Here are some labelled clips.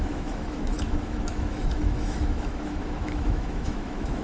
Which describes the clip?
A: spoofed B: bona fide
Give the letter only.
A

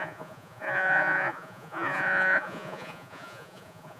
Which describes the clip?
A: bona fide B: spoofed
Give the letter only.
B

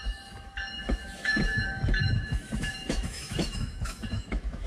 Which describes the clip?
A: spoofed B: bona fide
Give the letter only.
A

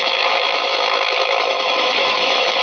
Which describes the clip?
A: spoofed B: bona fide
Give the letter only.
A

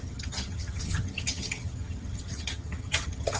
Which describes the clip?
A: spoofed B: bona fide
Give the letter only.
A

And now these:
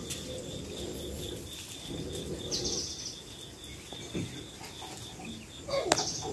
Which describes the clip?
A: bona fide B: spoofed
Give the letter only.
A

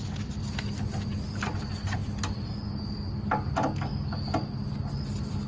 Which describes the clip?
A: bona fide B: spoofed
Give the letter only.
A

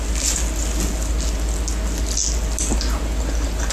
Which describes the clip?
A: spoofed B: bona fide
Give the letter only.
B